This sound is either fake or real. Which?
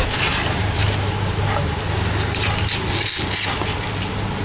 real